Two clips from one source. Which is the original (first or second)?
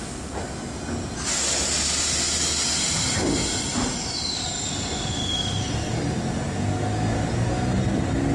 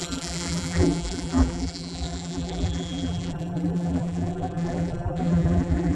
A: first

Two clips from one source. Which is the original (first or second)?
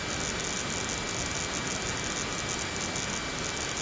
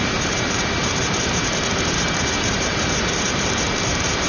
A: first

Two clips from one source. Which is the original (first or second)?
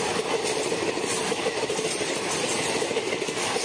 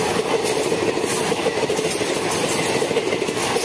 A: second